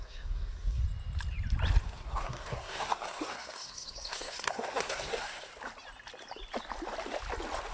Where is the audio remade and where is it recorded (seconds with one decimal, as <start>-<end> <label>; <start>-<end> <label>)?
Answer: 0.0-0.8 remade; 0.8-1.8 recorded; 1.8-5.5 remade; 5.5-7.7 recorded